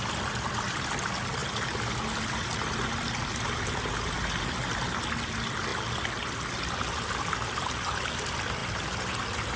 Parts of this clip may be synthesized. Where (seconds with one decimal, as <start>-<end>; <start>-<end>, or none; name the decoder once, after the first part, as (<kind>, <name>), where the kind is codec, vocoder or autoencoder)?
none

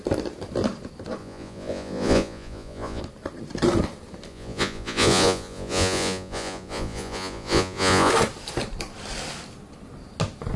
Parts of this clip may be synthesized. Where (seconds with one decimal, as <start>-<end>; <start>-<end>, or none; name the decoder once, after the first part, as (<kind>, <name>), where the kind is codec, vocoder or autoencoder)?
1.2-3.0 (vocoder, Vocos); 4.3-8.1

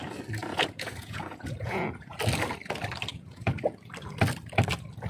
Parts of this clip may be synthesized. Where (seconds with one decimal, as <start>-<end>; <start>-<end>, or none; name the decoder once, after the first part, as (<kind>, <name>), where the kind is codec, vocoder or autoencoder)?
0.4-2.2 (vocoder, Vocos); 3.1-3.8

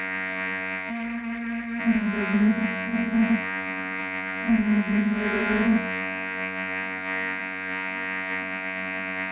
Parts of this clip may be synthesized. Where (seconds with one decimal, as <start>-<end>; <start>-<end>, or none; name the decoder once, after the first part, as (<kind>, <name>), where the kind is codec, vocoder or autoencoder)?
0.0-0.9 (vocoder, Vocos); 1.8-9.3

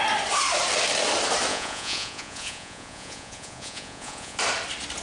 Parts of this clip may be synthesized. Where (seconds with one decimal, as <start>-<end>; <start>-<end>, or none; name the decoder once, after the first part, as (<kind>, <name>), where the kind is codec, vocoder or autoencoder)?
1.5-4.4 (vocoder, Vocos)

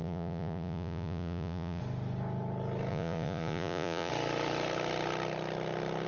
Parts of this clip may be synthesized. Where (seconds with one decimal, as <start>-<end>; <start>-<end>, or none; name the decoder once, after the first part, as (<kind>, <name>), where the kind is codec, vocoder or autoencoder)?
0.0-1.8 (vocoder, Vocos); 2.9-4.1

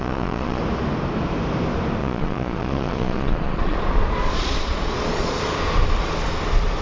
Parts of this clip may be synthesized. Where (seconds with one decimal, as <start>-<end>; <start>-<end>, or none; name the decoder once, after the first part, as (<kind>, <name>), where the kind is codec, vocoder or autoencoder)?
0.0-0.6 (vocoder, Vocos); 2.0-5.4

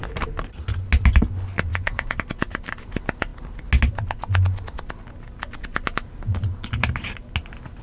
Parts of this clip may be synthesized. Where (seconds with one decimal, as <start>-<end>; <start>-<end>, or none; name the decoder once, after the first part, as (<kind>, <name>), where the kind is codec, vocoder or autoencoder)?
1.7-2.2 (vocoder, Vocos)